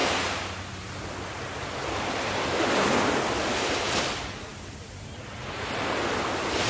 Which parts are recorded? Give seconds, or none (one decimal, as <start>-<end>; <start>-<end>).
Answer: 0.0-6.7